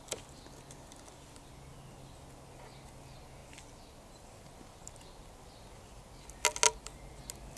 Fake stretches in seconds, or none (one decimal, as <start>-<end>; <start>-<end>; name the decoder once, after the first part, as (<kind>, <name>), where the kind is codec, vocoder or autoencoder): none